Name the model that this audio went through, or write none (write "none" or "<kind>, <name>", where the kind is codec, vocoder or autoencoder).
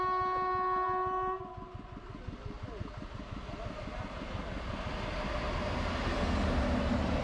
none